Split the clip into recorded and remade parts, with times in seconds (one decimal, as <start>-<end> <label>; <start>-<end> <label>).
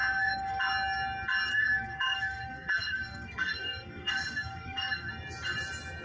0.0-0.6 remade; 0.6-1.5 recorded; 1.5-5.1 remade; 5.1-6.0 recorded